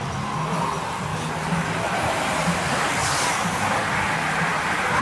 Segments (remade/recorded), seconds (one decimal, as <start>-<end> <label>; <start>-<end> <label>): 0.0-5.0 recorded